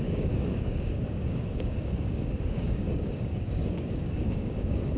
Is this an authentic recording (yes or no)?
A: no